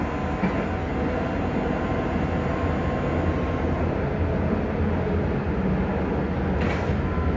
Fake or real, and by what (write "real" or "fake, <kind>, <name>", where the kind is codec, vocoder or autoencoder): real